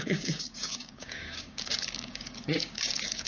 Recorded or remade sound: remade